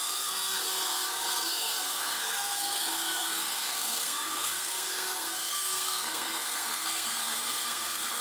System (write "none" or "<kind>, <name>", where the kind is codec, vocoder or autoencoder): codec, SNAC